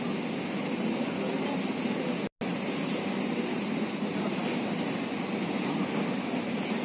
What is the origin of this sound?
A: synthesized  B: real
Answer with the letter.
B